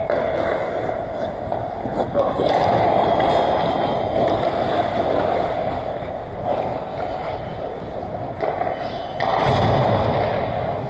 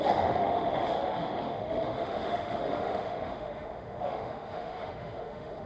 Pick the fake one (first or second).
second